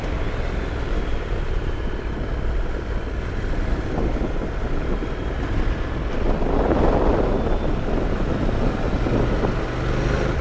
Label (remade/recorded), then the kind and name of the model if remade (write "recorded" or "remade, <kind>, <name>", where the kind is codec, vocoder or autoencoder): recorded